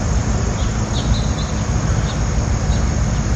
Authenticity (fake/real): real